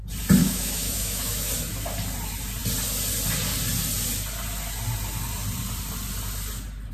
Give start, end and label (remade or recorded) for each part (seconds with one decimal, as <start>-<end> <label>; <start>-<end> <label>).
0.0-0.4 recorded; 0.4-1.5 remade; 1.5-6.9 recorded